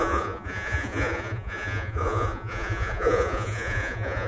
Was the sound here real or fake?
fake